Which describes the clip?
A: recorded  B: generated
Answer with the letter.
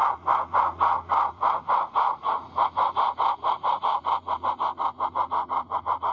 B